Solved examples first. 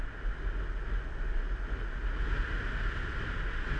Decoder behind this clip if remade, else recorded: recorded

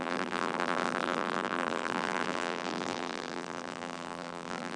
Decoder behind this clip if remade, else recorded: remade, vocoder, BigVGAN v2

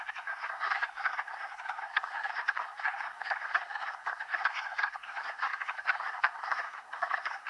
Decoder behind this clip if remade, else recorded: remade, codec, SNAC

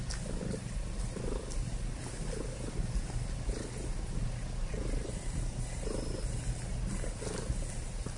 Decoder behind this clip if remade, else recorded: recorded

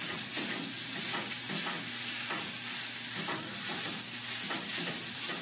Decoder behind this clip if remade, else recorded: recorded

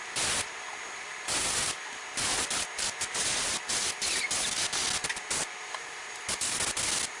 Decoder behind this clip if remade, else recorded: recorded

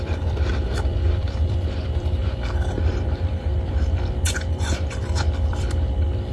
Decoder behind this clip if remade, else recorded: remade, vocoder, BigVGAN v2